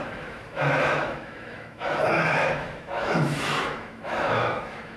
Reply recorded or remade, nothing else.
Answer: remade